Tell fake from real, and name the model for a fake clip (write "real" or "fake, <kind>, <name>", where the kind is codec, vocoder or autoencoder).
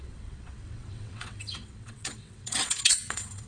fake, vocoder, WaveNeXt